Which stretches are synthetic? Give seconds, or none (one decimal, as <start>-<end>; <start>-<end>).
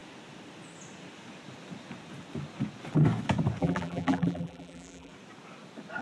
3.6-5.1